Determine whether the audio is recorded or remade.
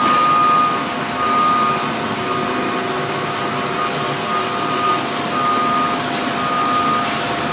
recorded